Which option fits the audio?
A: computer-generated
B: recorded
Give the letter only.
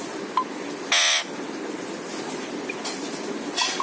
B